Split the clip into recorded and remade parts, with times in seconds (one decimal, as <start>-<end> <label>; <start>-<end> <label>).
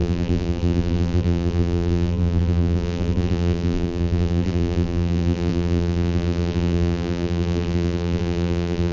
0.0-8.9 remade